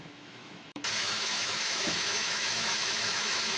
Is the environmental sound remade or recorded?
remade